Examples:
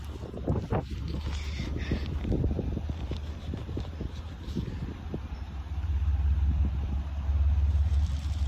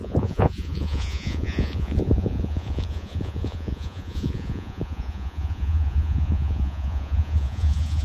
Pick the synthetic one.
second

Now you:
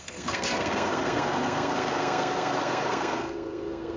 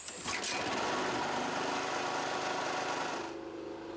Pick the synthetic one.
first